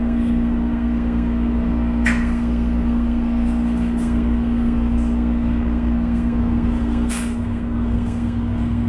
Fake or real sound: fake